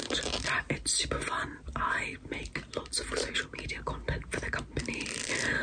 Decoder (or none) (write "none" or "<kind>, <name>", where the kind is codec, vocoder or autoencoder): none